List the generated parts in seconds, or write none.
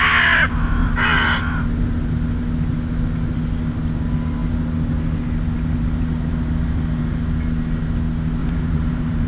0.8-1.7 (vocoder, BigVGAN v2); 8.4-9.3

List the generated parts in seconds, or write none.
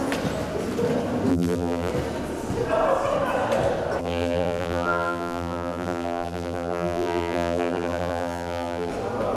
1.3-1.9 (vocoder, BigVGAN v2); 4.0-8.9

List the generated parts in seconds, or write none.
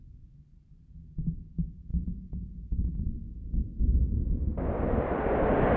0.0-5.8 (vocoder, BigVGAN v2)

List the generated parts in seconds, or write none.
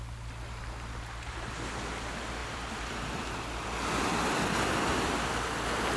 2.4-6.0 (vocoder, BigVGAN v2)